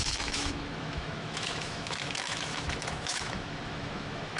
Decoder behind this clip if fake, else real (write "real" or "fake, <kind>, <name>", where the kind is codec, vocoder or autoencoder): fake, autoencoder, DAC-VAE